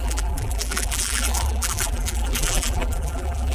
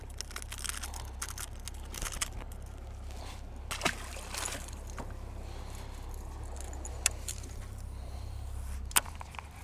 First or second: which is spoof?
first